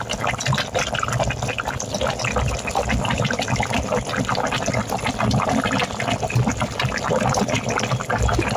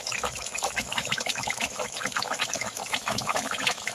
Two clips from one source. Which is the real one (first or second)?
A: first